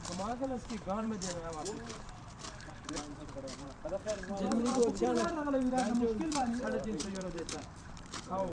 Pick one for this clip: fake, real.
fake